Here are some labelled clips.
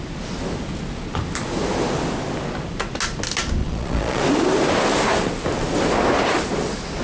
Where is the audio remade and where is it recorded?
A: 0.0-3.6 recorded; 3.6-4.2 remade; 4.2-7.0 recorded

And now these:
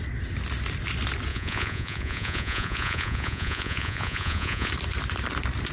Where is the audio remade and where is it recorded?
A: 0.0-1.3 recorded; 1.3-4.7 remade; 4.7-5.7 recorded